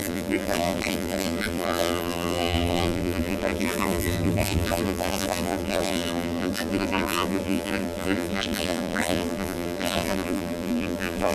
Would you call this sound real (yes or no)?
no